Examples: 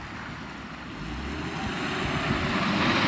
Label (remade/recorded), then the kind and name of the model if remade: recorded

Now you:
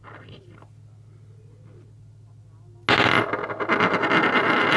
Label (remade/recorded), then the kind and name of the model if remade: recorded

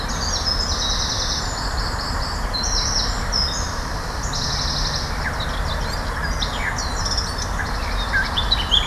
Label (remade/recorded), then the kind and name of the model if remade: recorded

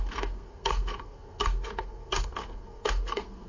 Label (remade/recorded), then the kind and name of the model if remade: remade, codec, SNAC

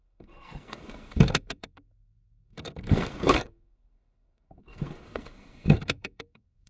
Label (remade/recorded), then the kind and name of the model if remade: remade, codec, SNAC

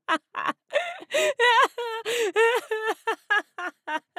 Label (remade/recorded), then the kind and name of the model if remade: recorded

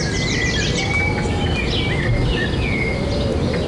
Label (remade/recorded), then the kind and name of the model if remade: recorded